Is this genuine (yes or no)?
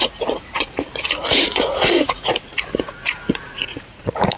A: no